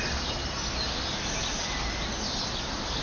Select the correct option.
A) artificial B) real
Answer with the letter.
B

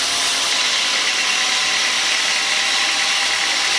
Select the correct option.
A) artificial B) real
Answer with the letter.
B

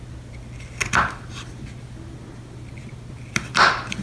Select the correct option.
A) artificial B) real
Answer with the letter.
B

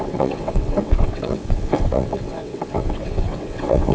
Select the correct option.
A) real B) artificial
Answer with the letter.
B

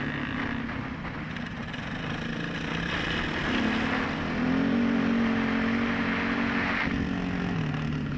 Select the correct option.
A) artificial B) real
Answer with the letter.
B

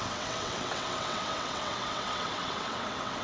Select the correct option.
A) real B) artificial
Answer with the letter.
B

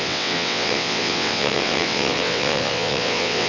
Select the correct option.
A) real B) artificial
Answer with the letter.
B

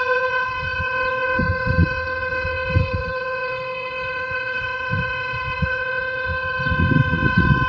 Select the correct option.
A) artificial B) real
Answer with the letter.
A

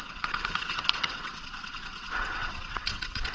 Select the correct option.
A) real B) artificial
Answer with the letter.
B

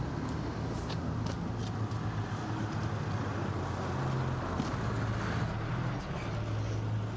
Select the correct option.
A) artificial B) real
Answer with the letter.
B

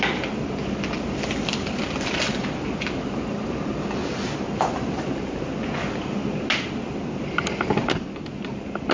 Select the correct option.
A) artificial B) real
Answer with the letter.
B